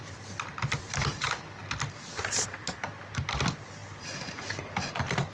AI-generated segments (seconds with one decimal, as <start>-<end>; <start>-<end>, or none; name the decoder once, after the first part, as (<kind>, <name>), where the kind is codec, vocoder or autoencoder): 0.0-0.5 (vocoder, BigVGAN v2)